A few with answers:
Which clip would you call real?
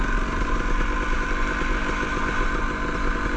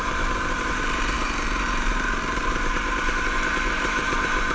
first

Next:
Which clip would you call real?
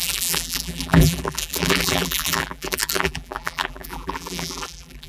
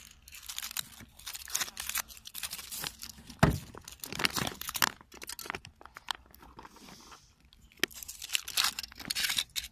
second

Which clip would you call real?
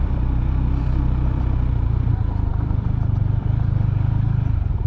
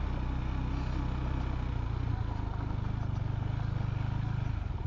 second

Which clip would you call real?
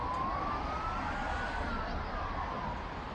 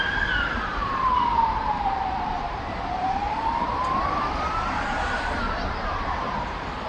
first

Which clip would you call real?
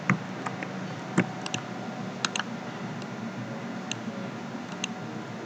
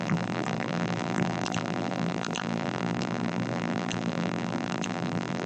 first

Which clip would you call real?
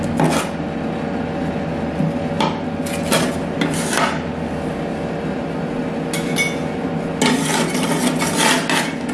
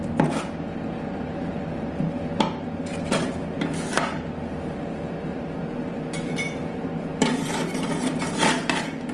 first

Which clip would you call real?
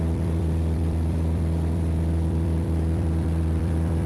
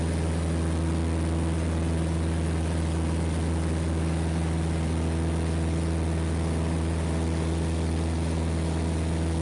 second